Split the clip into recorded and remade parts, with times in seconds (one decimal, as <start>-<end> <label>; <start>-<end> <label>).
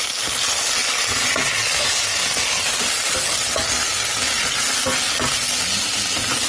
0.0-6.5 recorded